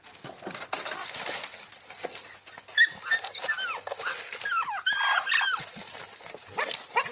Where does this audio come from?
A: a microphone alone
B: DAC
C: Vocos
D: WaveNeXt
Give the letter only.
A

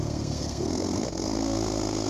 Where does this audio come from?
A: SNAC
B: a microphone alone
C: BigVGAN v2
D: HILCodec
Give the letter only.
A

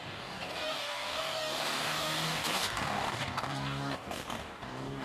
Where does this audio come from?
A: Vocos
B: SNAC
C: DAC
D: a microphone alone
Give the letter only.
C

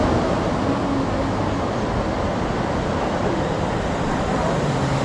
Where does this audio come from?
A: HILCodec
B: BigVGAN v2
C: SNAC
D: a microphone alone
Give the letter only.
D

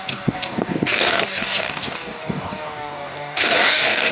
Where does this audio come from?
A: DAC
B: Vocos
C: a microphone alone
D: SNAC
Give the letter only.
A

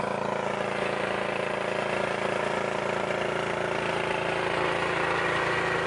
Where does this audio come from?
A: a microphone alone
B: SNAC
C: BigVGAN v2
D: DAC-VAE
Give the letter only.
A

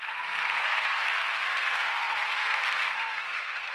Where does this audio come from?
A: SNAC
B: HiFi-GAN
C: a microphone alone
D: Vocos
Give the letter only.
A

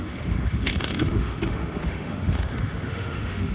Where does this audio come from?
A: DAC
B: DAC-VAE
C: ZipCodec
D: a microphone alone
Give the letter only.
B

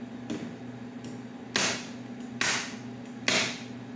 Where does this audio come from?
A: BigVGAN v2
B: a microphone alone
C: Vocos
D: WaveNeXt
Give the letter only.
B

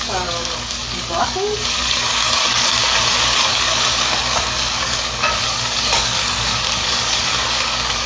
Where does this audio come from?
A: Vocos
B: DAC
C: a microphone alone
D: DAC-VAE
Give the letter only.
B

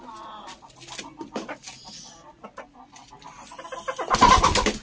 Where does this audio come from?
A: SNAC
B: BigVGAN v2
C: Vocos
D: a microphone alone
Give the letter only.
D